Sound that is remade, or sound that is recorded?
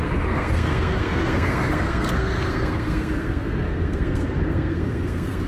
remade